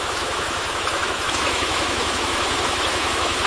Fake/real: fake